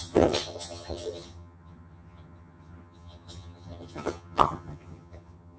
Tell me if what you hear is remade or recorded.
remade